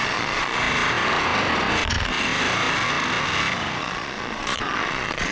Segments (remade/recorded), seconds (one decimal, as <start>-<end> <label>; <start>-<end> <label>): 0.0-0.6 remade; 0.6-3.8 recorded; 3.8-5.3 remade